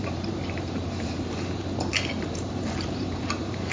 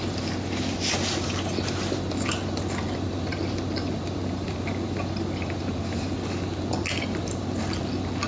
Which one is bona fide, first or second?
second